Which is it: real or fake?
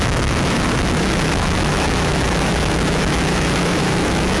fake